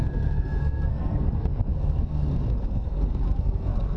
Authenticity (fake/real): fake